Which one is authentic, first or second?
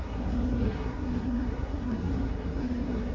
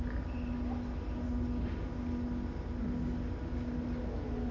second